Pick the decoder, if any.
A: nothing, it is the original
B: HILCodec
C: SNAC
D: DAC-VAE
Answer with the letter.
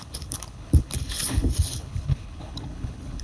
B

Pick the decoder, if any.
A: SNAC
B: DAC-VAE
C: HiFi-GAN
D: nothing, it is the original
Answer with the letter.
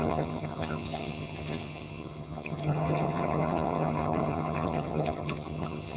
C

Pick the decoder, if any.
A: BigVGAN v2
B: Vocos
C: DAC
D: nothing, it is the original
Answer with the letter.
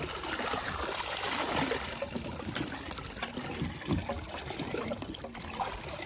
D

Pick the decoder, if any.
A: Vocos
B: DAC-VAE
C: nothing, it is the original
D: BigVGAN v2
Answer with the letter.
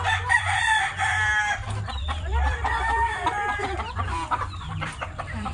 D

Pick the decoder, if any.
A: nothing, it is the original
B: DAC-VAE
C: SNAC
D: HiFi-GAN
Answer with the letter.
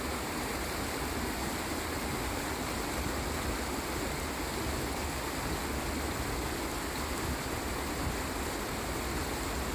A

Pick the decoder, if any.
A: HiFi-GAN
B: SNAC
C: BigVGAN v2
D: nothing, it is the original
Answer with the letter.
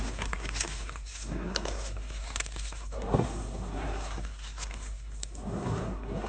B